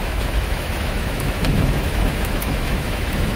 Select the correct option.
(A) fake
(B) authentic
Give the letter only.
A